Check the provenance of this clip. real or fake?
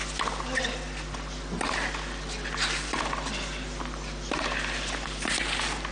real